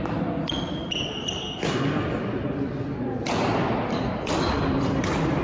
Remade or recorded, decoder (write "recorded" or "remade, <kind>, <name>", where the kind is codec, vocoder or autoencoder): recorded